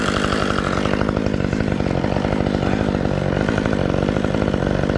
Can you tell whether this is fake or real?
real